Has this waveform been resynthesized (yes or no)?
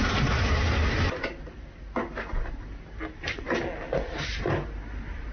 no